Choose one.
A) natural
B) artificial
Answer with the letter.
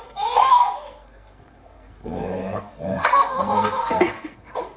B